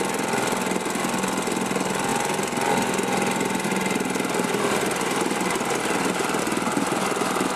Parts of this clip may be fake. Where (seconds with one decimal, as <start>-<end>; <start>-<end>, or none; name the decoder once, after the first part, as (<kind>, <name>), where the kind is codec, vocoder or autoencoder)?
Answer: none